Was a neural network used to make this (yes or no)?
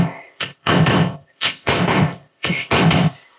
yes